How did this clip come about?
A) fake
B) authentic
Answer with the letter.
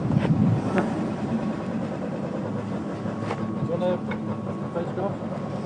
B